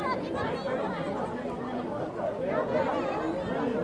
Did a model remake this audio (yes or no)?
no